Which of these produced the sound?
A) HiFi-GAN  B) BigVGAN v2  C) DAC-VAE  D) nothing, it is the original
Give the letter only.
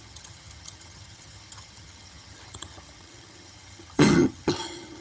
A